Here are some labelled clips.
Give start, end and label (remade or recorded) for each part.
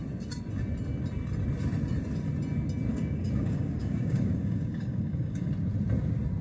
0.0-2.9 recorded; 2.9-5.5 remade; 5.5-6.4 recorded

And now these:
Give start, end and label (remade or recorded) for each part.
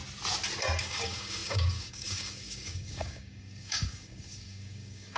0.0-0.8 recorded; 0.8-5.2 remade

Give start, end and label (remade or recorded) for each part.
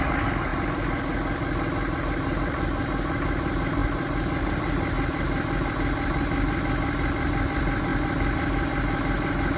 0.0-9.6 recorded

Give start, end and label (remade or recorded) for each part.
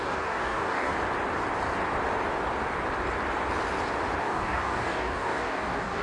0.0-0.9 remade; 0.9-4.2 recorded; 4.2-6.0 remade